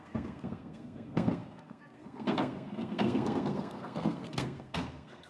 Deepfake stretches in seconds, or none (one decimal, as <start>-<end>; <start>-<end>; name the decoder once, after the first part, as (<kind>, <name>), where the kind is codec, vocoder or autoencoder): 0.0-5.3 (codec, SNAC)